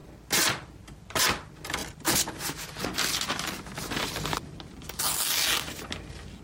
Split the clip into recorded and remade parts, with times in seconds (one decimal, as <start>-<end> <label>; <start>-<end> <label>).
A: 0.0-6.4 recorded